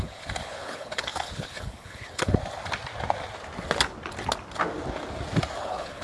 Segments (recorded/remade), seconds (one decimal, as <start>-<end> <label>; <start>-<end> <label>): 0.0-2.4 remade; 2.4-5.6 recorded; 5.6-6.0 remade